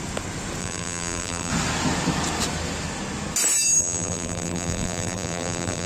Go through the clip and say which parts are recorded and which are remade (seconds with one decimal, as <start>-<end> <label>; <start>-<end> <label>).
0.0-0.6 recorded; 0.6-1.5 remade; 1.5-3.8 recorded; 3.8-5.9 remade